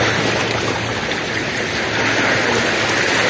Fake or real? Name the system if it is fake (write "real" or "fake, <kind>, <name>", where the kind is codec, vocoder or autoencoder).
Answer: real